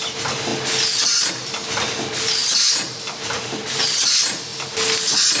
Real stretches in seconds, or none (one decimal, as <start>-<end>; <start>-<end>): 0.0-5.4